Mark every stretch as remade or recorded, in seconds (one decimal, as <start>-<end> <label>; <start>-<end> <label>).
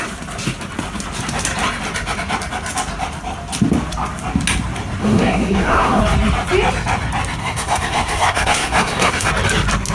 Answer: 0.0-5.0 recorded; 5.0-6.0 remade; 6.0-7.4 recorded; 7.4-9.3 remade; 9.3-9.9 recorded